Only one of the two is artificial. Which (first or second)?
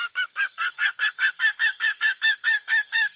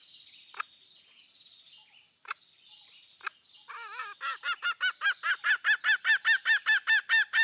first